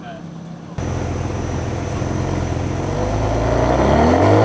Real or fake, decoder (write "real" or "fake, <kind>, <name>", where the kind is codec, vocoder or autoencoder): real